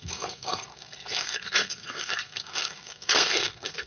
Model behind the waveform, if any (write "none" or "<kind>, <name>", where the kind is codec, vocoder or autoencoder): codec, SNAC